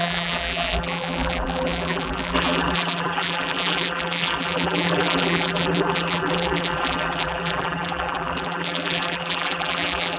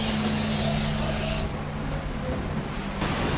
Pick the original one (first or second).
second